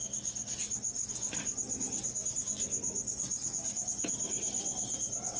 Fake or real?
real